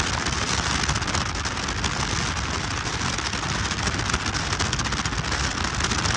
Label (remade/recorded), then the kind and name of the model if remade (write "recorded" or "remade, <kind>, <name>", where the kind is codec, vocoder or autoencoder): recorded